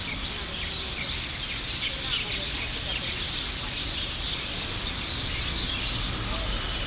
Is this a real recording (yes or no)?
yes